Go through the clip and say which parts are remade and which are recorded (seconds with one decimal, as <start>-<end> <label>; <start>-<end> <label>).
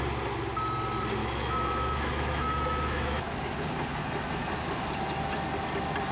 0.0-1.2 recorded; 1.2-3.5 remade; 3.5-6.1 recorded